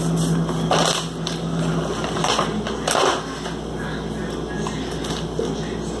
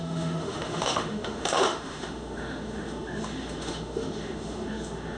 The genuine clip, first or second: first